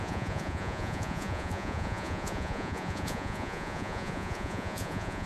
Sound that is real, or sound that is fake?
fake